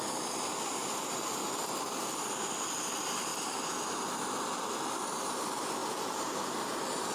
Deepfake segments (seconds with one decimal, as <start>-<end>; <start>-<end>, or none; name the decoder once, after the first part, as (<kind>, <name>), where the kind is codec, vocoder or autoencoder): none